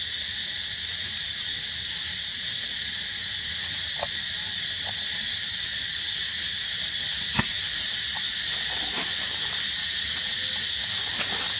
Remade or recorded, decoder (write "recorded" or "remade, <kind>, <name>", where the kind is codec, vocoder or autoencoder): recorded